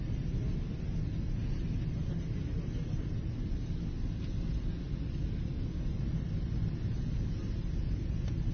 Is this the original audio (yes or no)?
yes